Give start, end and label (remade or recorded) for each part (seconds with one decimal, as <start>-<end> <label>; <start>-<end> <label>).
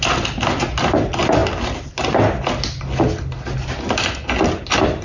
0.0-5.0 recorded